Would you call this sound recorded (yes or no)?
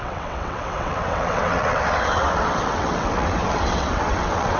no